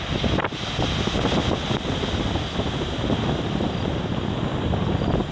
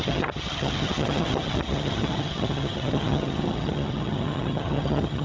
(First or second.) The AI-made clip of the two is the second